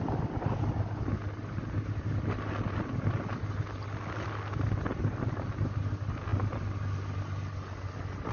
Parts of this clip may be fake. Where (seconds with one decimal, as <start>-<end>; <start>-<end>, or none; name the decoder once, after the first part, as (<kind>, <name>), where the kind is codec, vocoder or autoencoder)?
none